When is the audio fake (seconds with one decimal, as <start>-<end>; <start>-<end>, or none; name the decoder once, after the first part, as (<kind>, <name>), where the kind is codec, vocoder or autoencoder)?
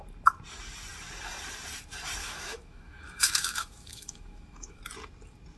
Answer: 2.2-4.8 (autoencoder, DAC-VAE)